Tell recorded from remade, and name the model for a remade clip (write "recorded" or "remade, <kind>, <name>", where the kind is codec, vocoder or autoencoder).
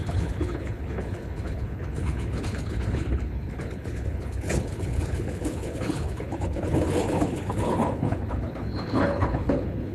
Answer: remade, codec, HILCodec